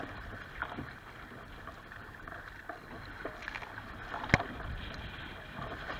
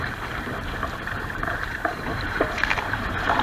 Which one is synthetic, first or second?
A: second